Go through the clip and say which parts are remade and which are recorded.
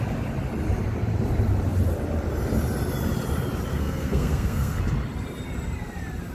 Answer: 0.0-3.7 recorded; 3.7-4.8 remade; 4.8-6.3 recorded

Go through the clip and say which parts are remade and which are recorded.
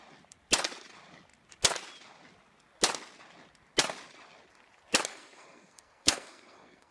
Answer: 0.0-5.1 recorded; 5.1-6.9 remade